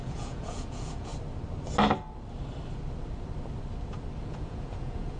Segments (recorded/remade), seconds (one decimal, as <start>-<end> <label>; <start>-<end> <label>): 0.0-1.1 remade; 1.1-4.2 recorded; 4.2-5.2 remade